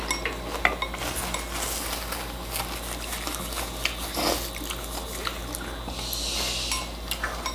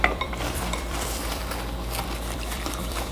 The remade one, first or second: second